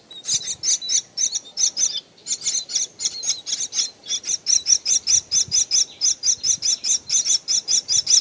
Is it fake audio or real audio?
real